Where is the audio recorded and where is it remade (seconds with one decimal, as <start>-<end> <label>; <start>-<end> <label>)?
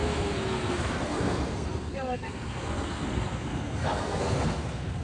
0.0-5.0 remade